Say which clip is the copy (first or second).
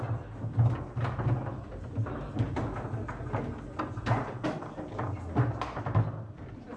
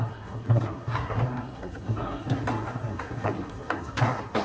second